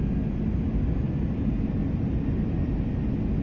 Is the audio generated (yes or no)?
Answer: no